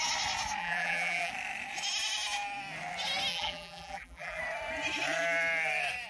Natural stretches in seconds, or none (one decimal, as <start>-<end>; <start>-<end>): 0.0-0.6; 1.3-3.3; 4.4-6.1